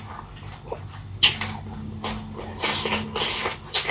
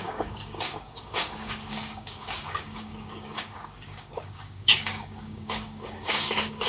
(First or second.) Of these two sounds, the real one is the first